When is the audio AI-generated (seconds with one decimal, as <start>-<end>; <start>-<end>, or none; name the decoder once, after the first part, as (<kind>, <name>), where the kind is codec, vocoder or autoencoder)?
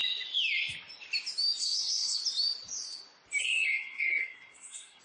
1.6-2.2 (codec, SNAC); 3.4-5.0